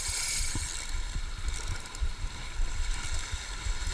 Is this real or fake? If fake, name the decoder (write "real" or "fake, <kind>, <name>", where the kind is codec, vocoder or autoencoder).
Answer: fake, vocoder, BigVGAN v2